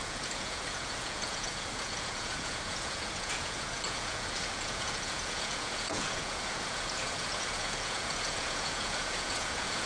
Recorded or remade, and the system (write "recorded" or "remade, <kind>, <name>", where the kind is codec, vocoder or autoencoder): remade, vocoder, Vocos